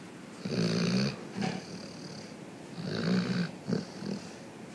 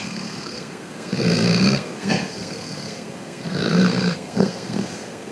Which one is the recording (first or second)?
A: first